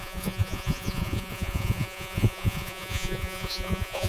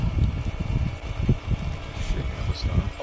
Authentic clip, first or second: second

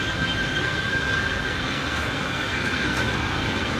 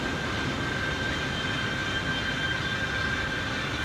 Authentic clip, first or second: second